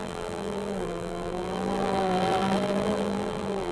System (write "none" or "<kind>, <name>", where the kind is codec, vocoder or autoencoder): vocoder, BigVGAN v2